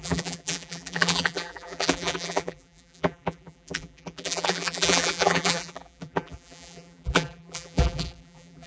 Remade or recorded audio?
remade